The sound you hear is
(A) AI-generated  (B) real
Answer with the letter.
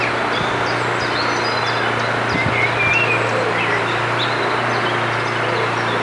B